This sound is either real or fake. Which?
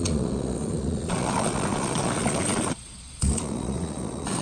fake